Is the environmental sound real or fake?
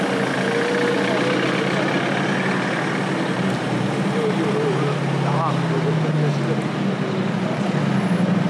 real